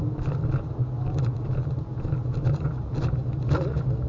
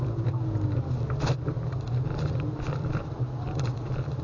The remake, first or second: second